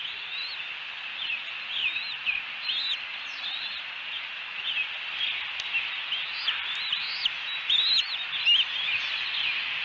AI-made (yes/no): no